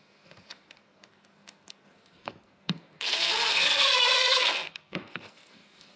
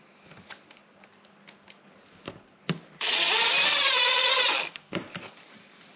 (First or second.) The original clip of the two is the second